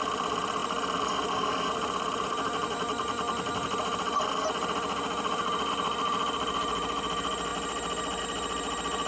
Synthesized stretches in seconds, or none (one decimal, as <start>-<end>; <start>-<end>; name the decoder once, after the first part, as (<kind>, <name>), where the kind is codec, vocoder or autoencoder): none